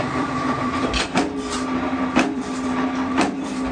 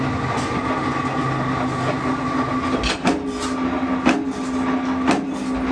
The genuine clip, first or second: second